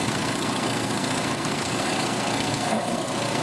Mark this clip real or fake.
fake